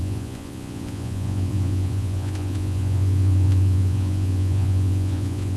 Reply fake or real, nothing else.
fake